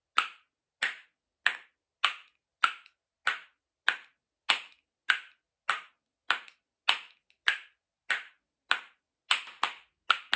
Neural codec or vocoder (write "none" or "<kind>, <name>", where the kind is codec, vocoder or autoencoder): none